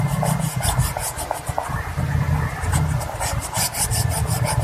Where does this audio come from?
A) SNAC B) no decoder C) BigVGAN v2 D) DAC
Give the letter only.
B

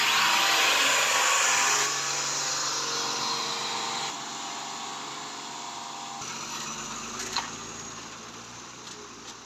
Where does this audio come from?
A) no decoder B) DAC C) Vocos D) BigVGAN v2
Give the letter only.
A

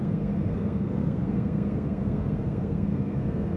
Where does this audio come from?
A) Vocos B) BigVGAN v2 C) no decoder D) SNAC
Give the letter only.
D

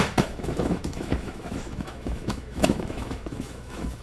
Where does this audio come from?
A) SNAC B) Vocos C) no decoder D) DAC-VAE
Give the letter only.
D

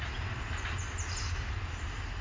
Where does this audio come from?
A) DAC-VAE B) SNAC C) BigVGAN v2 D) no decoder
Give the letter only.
C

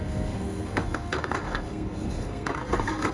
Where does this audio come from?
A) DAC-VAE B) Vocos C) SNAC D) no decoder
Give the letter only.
C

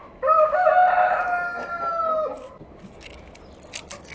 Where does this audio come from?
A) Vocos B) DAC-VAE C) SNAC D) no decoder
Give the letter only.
D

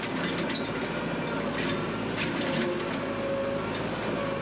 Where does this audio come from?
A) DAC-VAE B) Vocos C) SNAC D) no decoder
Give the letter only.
D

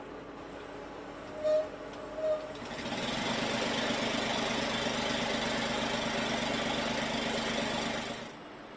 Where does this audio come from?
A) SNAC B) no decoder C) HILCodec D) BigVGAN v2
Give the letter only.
B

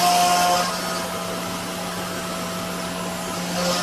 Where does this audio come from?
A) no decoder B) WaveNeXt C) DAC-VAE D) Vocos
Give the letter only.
A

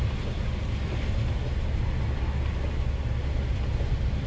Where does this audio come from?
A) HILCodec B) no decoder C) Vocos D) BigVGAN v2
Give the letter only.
B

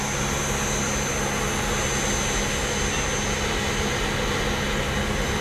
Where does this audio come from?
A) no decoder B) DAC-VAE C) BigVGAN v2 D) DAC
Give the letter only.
A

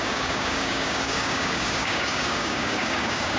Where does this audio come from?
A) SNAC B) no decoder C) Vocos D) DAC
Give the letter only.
D